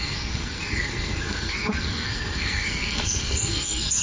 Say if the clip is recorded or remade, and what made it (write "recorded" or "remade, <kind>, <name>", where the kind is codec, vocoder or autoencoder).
remade, codec, SNAC